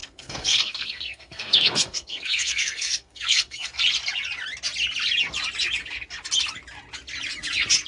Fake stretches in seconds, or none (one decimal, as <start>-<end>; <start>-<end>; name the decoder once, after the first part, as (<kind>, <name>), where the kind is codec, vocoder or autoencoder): 0.0-3.8 (codec, SNAC)